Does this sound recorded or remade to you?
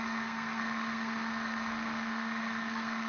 remade